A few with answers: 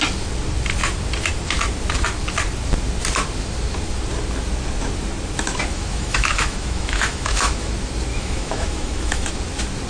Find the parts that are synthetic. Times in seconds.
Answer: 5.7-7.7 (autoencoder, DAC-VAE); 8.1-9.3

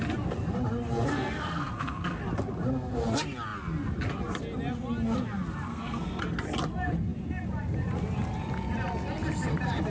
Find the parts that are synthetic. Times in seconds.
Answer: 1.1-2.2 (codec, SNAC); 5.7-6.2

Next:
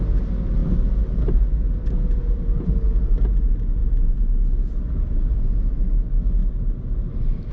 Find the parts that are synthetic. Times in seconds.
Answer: 2.2-2.8 (vocoder, Vocos); 3.8-5.8

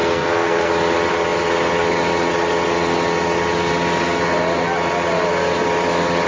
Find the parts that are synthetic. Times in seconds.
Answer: 0.0-0.7 (codec, SNAC)